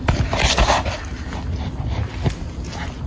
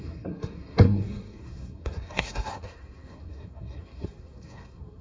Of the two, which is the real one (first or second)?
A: first